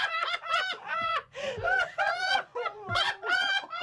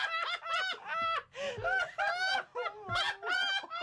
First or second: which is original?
second